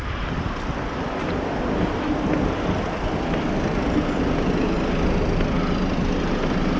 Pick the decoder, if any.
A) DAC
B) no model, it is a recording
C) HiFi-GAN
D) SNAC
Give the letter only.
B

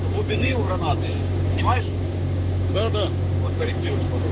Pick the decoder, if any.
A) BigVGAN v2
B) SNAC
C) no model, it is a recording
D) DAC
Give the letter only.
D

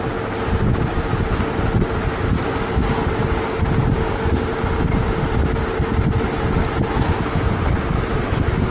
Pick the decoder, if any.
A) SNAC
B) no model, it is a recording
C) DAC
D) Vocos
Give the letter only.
B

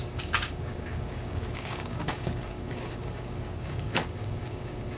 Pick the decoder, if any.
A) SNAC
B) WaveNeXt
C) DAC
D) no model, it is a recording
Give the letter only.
C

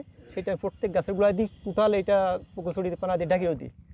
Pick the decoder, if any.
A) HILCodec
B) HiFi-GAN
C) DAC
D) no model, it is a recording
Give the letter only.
D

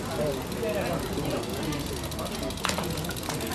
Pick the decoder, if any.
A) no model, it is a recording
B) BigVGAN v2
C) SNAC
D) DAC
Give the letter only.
A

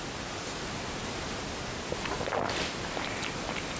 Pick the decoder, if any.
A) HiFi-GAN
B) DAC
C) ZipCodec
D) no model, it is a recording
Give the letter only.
D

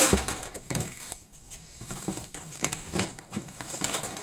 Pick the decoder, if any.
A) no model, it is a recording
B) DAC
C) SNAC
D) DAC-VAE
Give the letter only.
B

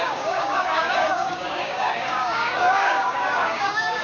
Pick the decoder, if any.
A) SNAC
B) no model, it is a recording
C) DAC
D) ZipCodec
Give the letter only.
C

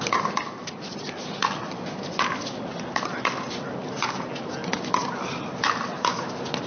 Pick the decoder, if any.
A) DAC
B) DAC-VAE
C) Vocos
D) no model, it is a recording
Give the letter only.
D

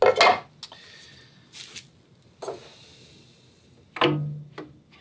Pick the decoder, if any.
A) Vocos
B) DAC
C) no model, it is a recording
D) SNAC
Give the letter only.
C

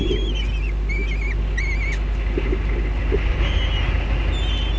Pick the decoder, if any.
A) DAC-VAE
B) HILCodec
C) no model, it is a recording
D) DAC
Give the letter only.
C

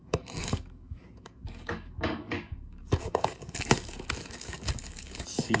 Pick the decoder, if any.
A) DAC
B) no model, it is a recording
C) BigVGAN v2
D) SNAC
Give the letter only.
A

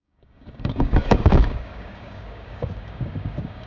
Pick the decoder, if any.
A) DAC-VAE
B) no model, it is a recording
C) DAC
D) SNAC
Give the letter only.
C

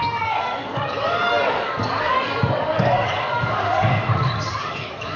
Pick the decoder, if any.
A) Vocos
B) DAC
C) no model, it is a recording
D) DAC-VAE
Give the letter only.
B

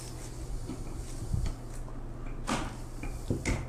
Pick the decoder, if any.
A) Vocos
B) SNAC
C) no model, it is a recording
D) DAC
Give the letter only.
C